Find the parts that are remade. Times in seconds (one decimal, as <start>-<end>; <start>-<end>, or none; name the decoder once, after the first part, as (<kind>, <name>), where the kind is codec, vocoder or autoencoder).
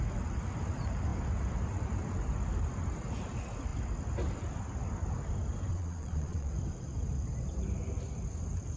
5.7-6.5 (vocoder, Vocos)